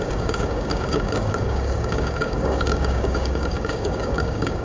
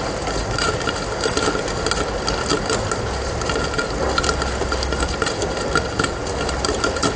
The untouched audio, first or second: second